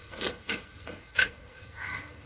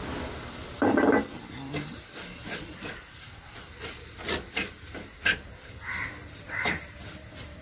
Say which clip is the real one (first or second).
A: second